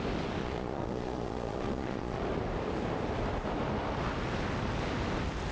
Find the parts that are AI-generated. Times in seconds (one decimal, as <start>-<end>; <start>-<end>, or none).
0.4-2.2